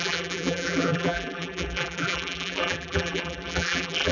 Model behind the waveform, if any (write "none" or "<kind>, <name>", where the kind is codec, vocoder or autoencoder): vocoder, BigVGAN v2